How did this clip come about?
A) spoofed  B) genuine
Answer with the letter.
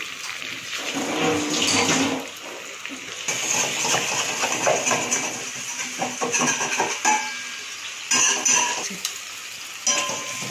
B